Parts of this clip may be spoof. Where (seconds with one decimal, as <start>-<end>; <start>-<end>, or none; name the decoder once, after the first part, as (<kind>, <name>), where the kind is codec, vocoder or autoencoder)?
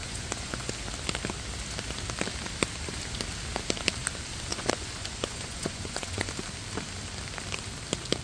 0.0-0.7 (vocoder, Vocos); 4.5-6.3